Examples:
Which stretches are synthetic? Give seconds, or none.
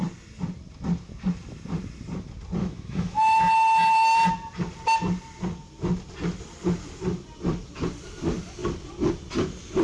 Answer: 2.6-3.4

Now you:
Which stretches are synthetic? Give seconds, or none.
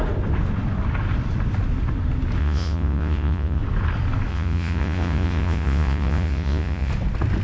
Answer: 2.4-3.6; 4.3-6.9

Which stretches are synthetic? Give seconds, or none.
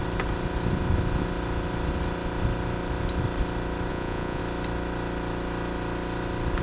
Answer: 3.9-4.4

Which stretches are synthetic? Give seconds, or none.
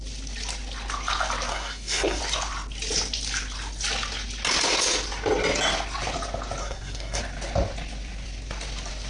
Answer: 1.5-2.2; 6.6-7.2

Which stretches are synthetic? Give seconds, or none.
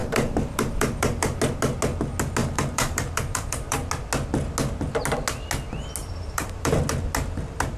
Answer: 0.0-1.4; 2.4-3.9; 6.0-6.8